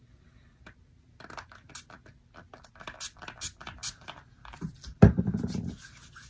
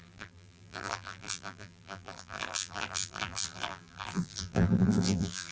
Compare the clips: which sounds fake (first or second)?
second